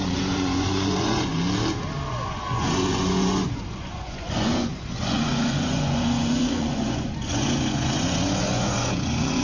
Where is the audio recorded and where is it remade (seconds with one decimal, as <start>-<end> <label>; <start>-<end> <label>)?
0.0-1.3 remade; 1.3-2.1 recorded; 2.1-9.4 remade